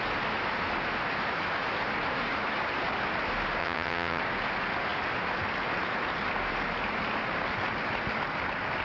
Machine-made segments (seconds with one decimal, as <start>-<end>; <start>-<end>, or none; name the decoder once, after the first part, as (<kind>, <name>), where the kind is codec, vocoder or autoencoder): 3.6-4.2 (vocoder, HiFi-GAN)